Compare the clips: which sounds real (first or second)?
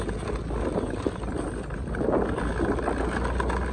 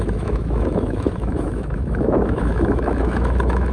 first